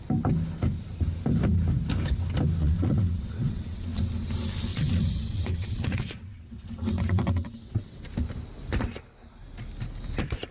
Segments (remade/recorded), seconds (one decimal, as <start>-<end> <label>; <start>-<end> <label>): 0.0-2.6 recorded; 2.6-4.0 remade; 4.0-4.7 recorded; 4.7-8.1 remade; 8.1-10.5 recorded